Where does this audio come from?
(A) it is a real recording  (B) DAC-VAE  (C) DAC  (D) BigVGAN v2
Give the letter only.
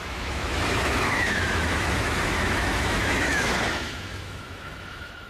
B